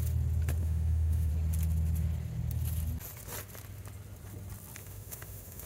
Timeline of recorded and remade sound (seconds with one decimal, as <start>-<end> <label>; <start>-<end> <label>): 0.0-0.6 recorded; 0.6-1.3 remade; 1.3-4.8 recorded; 4.8-5.7 remade